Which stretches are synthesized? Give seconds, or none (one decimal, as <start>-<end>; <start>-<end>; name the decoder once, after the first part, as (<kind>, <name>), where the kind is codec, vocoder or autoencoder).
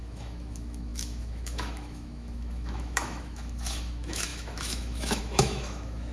0.0-6.1 (autoencoder, DAC-VAE)